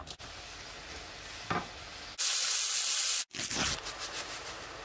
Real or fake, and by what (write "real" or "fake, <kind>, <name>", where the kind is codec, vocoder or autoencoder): real